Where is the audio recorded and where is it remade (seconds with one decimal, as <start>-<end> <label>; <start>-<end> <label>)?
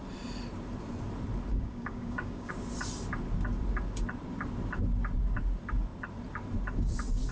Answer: 0.0-1.5 recorded; 1.5-2.5 remade; 2.5-7.3 recorded